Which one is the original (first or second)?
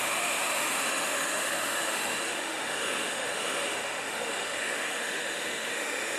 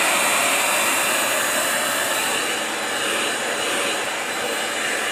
second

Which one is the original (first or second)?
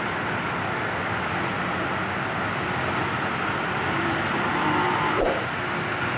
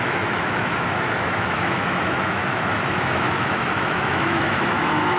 first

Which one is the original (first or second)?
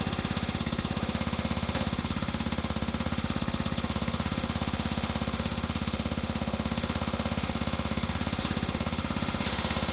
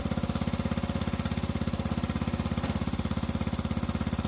second